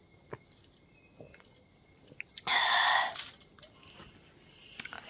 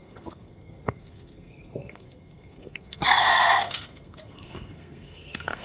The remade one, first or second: second